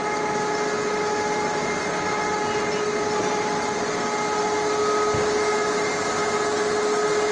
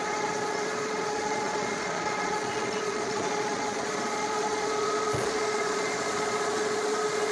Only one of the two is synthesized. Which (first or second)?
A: second